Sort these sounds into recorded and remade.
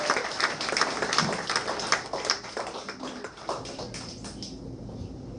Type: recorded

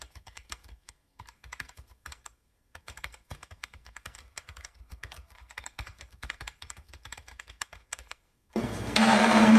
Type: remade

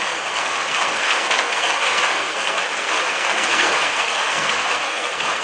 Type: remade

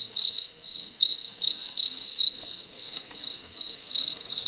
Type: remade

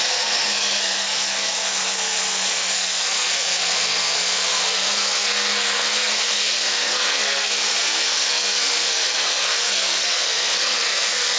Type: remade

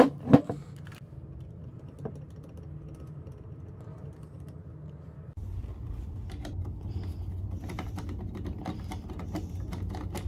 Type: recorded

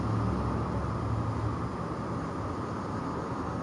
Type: recorded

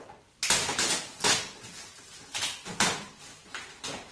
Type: recorded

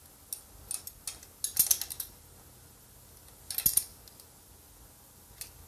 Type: recorded